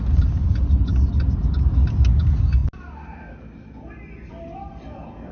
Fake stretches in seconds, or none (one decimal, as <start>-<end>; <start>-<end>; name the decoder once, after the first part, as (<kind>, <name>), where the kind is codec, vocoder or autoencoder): none